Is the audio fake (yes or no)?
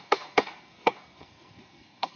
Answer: yes